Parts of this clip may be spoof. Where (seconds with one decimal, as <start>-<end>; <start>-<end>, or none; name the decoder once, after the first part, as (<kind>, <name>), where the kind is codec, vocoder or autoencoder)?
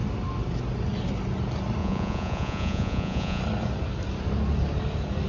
1.8-3.4 (vocoder, Vocos)